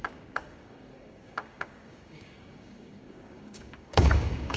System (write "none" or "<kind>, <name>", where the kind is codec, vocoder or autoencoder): codec, DAC